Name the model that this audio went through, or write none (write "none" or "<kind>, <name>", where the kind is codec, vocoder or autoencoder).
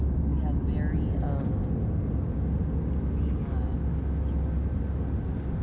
none